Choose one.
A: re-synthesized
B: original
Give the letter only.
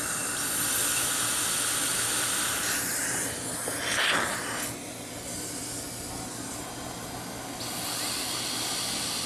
B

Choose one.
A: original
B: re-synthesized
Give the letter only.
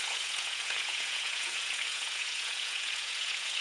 B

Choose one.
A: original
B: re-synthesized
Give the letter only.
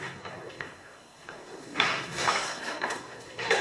B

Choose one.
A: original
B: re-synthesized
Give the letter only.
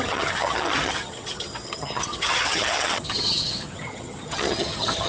B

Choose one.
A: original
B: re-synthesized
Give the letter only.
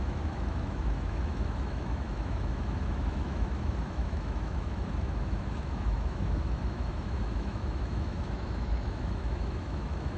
B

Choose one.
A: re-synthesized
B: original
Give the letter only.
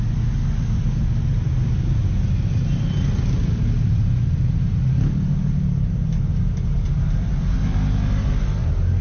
B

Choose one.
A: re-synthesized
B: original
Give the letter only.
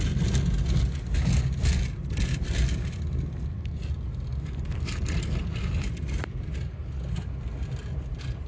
B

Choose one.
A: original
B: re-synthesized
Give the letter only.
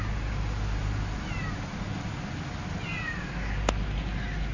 A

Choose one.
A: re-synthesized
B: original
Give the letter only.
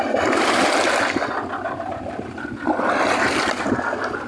B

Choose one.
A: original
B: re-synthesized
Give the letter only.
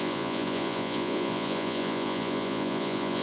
B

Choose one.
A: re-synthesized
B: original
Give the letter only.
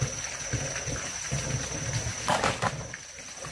B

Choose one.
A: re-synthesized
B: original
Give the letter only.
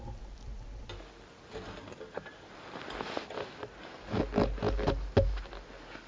B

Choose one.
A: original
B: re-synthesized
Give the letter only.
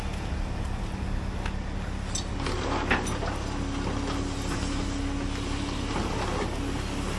A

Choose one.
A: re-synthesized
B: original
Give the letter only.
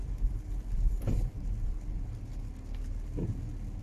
B